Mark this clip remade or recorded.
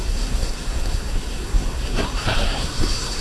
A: remade